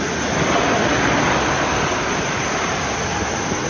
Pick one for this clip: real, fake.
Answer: real